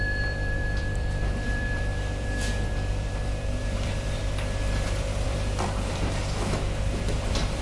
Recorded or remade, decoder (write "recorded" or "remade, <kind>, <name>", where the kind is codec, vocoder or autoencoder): remade, vocoder, BigVGAN v2